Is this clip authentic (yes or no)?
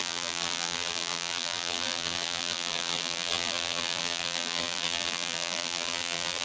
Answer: no